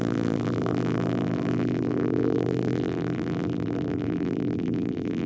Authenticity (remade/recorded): remade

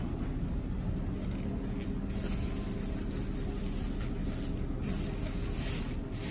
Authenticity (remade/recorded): recorded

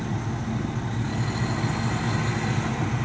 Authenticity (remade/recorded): recorded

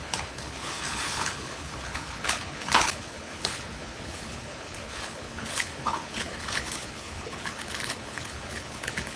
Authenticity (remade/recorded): remade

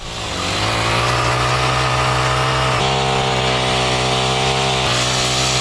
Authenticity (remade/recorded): recorded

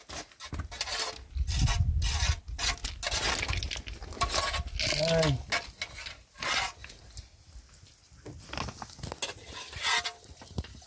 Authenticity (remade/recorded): recorded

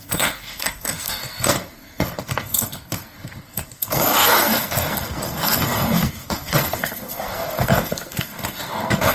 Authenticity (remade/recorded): remade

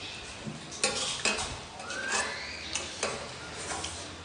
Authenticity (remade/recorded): recorded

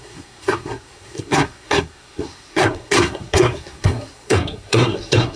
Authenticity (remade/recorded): remade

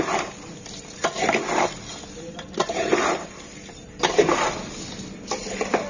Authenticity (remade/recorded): remade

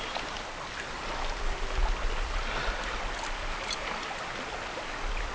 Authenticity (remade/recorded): recorded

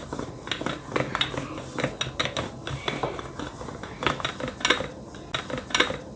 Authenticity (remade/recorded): recorded